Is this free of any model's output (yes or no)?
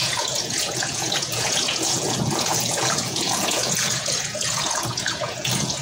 no